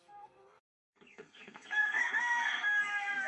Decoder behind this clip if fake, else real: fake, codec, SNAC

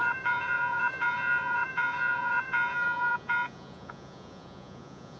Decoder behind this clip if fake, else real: fake, vocoder, Vocos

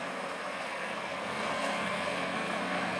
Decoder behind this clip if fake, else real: fake, codec, SNAC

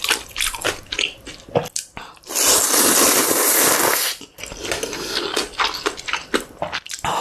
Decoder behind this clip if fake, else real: real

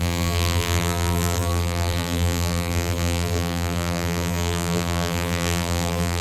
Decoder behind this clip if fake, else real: fake, vocoder, BigVGAN v2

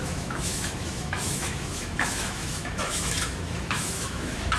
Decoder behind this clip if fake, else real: fake, autoencoder, DAC-VAE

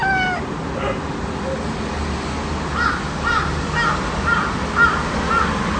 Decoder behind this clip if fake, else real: real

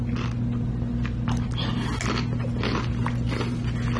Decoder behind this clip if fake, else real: real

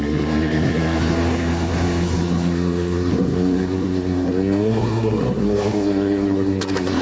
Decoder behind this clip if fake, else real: fake, codec, SNAC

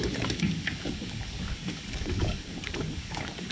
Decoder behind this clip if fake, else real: fake, codec, DAC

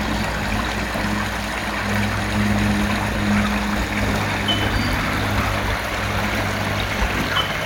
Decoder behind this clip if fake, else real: real